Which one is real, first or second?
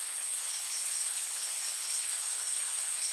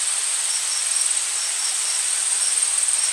second